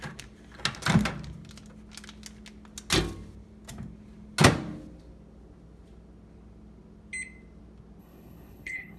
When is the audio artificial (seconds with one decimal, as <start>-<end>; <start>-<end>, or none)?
8.0-9.0